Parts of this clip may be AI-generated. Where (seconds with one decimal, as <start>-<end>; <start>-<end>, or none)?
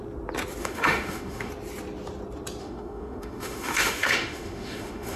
0.6-1.5; 2.6-5.2